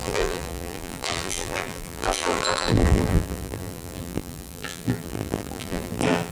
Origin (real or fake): fake